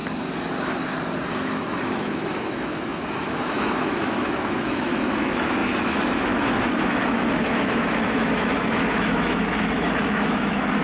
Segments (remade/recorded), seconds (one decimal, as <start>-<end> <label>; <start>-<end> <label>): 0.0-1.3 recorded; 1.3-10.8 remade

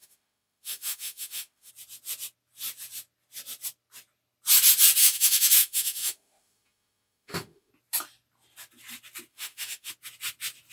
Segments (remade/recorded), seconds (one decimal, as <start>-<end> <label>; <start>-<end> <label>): 0.0-1.7 remade; 1.7-5.0 recorded; 5.0-7.7 remade; 7.7-9.3 recorded; 9.3-9.9 remade; 9.9-10.7 recorded

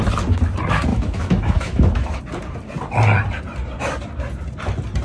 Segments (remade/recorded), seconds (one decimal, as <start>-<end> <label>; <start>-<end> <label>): 0.0-0.9 recorded; 0.9-2.2 remade; 2.2-5.0 recorded

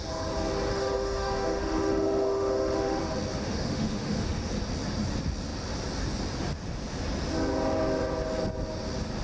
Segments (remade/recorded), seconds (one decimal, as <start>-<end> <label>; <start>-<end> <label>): 0.0-0.7 recorded; 0.7-3.0 remade; 3.0-3.4 recorded; 3.4-4.5 remade; 4.5-9.2 recorded